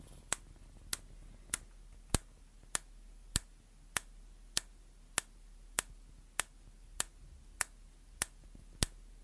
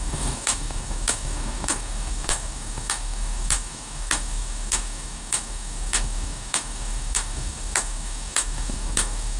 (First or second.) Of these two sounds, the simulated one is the second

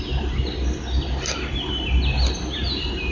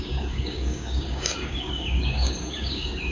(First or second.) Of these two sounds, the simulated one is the second